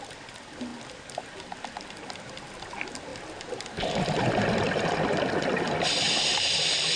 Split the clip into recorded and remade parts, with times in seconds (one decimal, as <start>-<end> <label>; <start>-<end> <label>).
0.0-7.0 recorded